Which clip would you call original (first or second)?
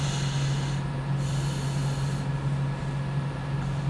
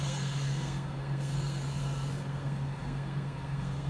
first